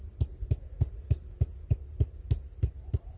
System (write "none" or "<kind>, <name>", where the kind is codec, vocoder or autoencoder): none